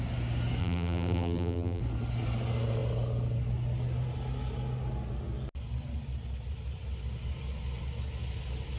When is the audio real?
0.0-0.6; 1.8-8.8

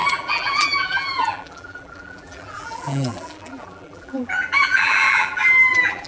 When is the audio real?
none

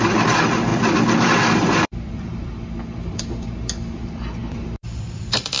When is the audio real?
0.0-0.7; 2.5-4.4

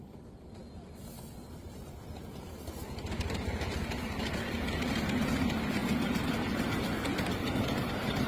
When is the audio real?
0.0-8.3

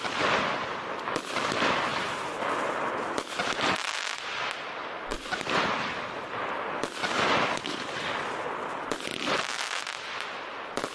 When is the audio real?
0.0-1.9; 2.4-5.1; 5.9-10.9

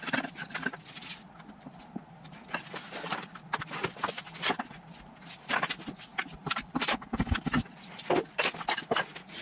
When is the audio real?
0.0-6.4; 7.3-9.4

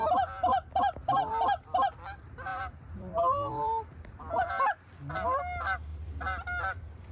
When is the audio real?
0.0-2.5; 4.3-7.1